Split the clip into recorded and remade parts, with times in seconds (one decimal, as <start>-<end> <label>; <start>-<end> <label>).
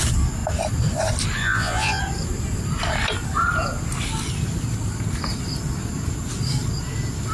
0.0-1.4 recorded; 1.4-2.0 remade; 2.0-7.3 recorded